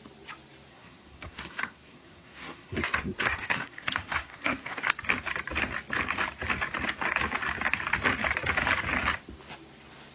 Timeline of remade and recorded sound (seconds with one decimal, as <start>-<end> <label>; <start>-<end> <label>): 0.0-0.7 recorded; 0.7-4.9 remade; 4.9-10.1 recorded